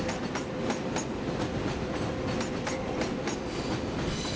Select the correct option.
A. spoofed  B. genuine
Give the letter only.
B